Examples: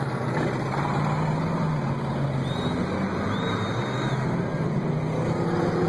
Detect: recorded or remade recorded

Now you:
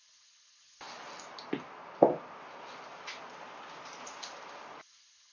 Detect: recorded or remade recorded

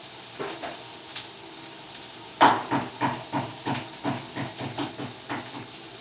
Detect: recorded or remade recorded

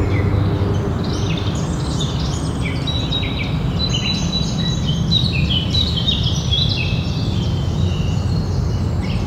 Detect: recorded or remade remade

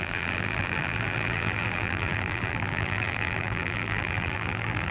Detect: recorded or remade remade